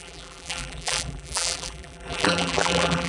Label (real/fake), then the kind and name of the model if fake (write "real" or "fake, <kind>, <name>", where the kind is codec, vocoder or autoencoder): fake, vocoder, BigVGAN v2